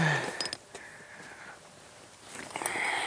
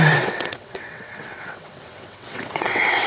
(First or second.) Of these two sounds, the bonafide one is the first